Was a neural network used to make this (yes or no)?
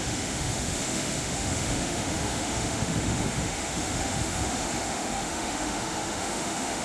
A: yes